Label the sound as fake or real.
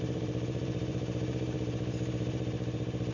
fake